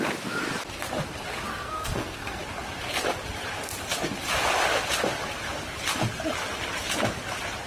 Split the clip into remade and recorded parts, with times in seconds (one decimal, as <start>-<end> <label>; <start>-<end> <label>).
0.0-1.5 recorded; 1.5-2.4 remade; 2.4-7.7 recorded